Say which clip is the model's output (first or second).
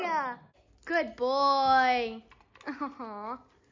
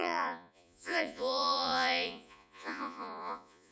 second